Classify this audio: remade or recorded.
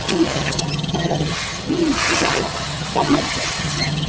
remade